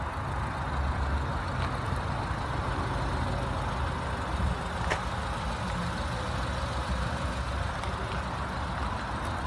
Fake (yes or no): no